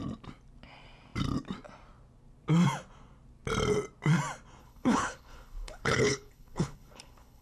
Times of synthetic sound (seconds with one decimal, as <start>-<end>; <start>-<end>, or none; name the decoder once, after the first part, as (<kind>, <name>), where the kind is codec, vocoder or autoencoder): 4.6-7.4 (codec, HILCodec)